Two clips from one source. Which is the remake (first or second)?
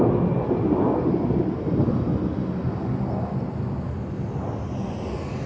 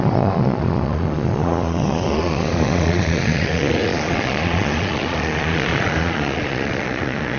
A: second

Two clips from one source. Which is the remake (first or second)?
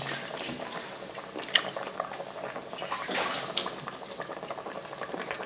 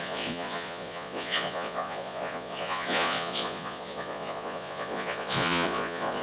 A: second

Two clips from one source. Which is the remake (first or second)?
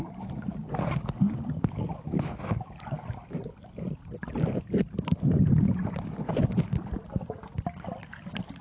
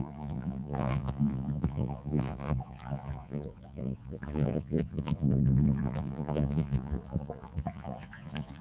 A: second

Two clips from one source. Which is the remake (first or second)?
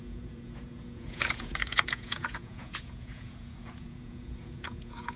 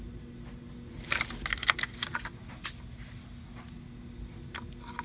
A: first